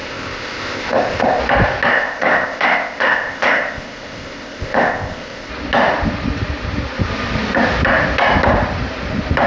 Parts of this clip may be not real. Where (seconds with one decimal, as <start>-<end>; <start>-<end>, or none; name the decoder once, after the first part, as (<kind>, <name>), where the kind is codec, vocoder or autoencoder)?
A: 0.0-1.4 (codec, ZipCodec); 1.9-5.5